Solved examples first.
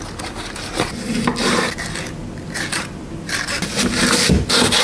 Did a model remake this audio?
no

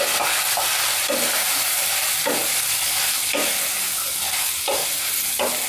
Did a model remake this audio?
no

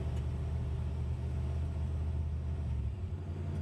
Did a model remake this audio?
no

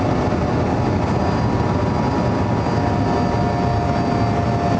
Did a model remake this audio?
no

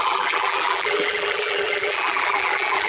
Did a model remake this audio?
yes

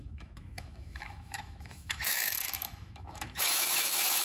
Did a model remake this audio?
yes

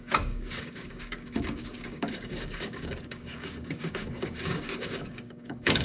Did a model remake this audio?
yes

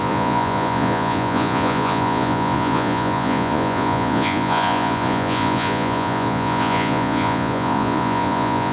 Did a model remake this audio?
yes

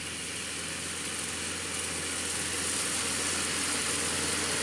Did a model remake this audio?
no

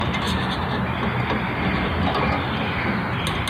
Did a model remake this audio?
no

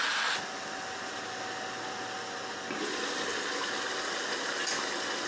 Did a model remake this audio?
no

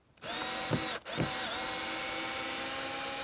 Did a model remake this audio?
no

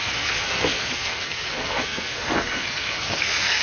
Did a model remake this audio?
yes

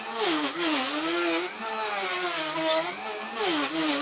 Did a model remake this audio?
no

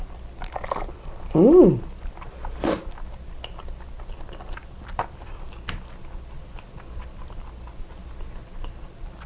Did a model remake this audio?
no